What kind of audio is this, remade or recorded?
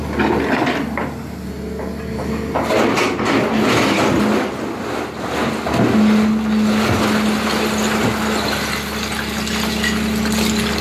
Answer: recorded